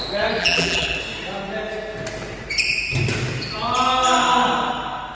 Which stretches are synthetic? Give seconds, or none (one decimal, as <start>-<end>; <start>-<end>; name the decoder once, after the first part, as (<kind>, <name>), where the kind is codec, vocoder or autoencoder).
0.4-1.0 (vocoder, BigVGAN v2)

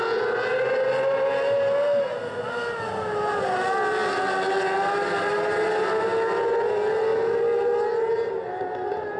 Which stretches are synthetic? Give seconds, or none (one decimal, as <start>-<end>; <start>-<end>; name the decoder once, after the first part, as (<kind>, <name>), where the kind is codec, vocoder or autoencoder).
none

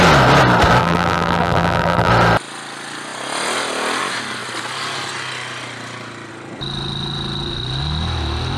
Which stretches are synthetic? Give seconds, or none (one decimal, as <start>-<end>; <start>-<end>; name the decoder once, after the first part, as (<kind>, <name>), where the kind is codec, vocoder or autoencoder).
0.8-2.1 (vocoder, BigVGAN v2)

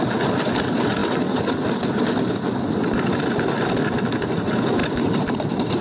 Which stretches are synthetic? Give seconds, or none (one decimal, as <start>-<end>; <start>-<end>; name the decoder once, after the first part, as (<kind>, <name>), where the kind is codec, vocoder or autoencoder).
none

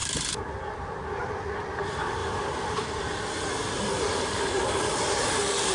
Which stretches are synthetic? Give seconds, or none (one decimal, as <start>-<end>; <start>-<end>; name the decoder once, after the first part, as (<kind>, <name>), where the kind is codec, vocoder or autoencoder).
0.0-1.0 (vocoder, BigVGAN v2); 2.2-5.7